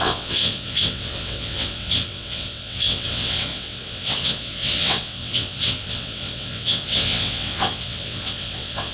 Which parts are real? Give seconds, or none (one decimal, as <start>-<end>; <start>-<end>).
none